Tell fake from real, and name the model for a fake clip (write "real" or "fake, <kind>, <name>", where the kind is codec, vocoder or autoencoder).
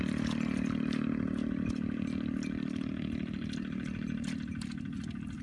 real